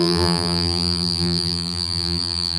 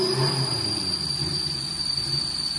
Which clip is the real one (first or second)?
second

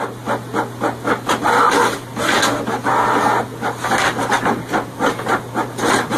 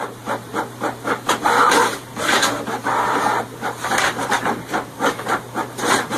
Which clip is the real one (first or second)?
first